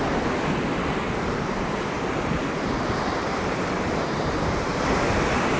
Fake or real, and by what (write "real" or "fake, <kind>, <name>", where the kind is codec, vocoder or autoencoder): real